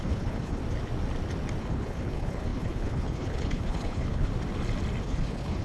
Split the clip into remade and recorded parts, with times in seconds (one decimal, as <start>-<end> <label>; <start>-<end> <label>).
0.0-0.6 remade; 0.6-1.6 recorded; 1.6-4.3 remade; 4.3-5.0 recorded; 5.0-5.6 remade